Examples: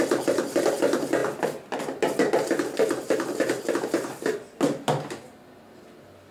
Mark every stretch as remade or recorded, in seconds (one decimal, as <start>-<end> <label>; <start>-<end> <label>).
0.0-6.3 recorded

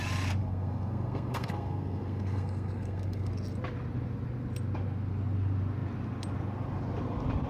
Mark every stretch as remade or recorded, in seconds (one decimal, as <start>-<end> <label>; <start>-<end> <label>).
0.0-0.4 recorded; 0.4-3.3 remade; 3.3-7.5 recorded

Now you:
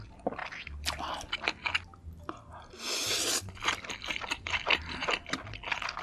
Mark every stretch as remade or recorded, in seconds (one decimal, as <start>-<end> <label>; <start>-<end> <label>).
0.0-6.0 recorded